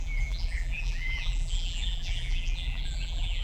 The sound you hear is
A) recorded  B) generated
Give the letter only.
B